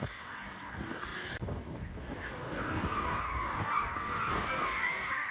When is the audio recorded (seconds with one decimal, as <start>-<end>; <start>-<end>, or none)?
none